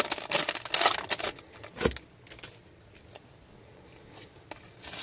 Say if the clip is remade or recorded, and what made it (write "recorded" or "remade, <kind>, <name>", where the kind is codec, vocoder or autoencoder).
recorded